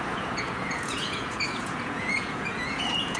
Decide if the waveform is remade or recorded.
remade